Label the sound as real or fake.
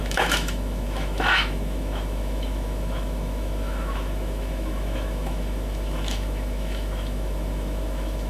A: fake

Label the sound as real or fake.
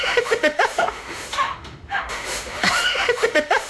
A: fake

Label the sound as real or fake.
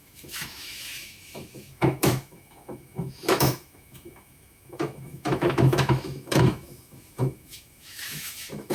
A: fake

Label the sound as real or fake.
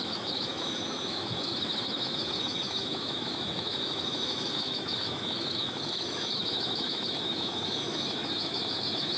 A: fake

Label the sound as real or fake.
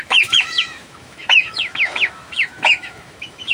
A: fake